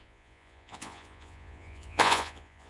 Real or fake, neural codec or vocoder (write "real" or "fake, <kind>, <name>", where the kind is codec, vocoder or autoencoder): fake, vocoder, Vocos